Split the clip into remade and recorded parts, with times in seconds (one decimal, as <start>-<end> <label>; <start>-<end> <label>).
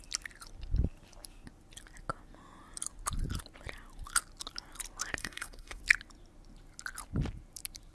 0.0-5.2 recorded; 5.2-5.8 remade; 5.8-7.9 recorded